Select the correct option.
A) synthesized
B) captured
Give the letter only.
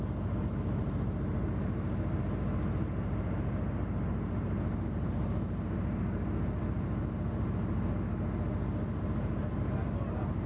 B